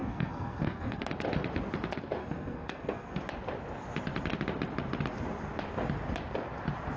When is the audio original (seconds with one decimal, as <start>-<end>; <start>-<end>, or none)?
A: 1.1-2.2; 3.2-7.0